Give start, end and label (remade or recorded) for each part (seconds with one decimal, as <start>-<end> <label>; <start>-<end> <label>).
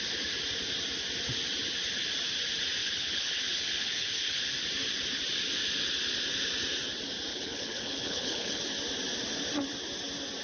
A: 0.0-2.8 recorded; 2.8-4.4 remade; 4.4-7.3 recorded; 7.3-8.6 remade; 8.6-10.4 recorded